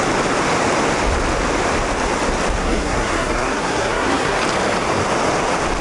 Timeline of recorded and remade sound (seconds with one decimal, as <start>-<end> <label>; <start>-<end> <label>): 0.0-2.6 recorded; 2.6-4.4 remade; 4.4-5.8 recorded